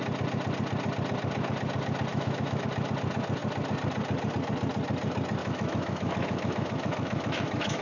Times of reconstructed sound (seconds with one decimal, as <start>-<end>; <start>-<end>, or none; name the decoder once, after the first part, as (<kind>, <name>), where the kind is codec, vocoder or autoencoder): 2.1-2.6 (autoencoder, DAC-VAE); 5.4-7.8